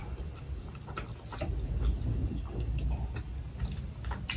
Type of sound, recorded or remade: recorded